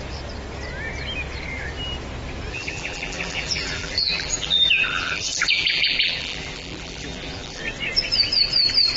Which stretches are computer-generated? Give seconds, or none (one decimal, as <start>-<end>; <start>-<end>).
2.5-7.6